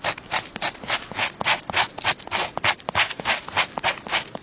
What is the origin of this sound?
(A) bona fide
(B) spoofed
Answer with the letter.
A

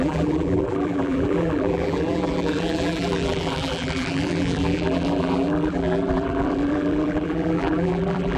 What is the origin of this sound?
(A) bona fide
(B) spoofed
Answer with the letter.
B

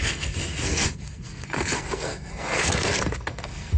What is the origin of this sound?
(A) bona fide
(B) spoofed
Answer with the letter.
B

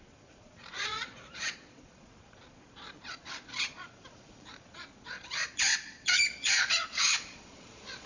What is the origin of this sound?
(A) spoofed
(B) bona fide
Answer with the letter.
A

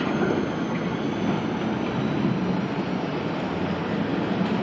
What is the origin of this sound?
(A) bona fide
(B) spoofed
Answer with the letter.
A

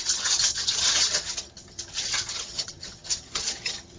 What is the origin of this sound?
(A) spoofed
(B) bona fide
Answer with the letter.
A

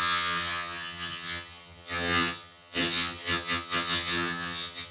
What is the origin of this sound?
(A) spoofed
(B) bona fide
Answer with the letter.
A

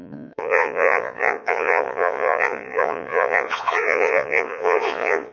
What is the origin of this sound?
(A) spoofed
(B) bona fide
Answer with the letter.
A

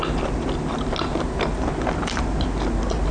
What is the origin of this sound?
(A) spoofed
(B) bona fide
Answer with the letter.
B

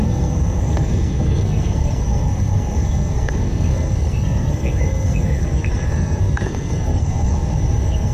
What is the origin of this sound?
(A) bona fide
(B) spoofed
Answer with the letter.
B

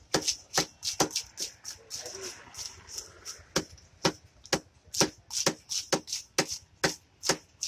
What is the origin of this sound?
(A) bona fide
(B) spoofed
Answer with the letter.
A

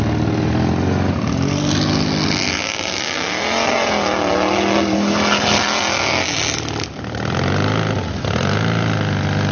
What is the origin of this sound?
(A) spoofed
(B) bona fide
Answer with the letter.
B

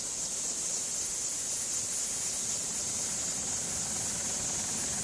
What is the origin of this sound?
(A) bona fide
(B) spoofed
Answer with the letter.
A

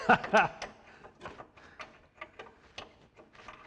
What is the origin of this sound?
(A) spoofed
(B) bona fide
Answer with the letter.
B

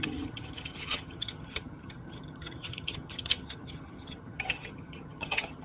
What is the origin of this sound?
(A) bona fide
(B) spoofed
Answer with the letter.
B